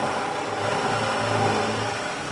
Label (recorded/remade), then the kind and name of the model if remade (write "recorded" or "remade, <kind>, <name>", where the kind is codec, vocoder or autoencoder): recorded